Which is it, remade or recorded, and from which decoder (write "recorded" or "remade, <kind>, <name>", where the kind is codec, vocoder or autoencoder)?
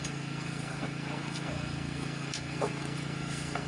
remade, codec, SNAC